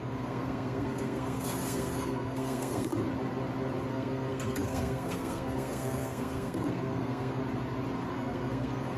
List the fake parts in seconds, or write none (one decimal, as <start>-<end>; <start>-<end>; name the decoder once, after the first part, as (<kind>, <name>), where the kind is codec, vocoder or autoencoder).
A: 0.0-2.9 (codec, SNAC); 3.9-7.4; 8.1-9.0